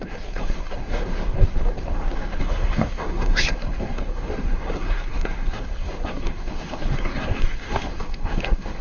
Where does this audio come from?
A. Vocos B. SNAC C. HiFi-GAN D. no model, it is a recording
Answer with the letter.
B